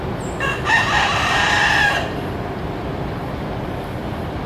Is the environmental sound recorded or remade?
recorded